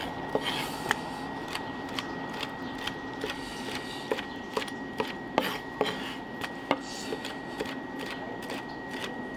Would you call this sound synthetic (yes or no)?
no